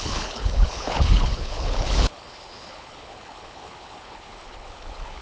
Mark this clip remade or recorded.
remade